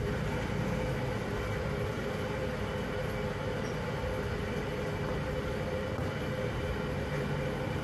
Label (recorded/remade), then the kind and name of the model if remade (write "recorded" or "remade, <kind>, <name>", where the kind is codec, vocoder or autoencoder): recorded